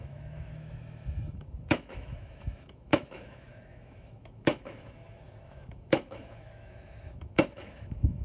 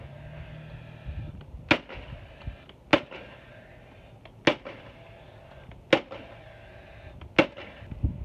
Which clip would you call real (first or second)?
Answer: second